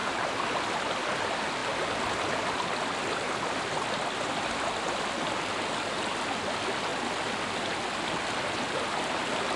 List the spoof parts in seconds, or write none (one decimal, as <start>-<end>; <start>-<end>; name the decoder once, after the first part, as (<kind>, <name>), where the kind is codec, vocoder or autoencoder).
none